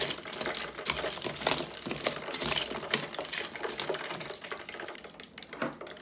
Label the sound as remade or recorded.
recorded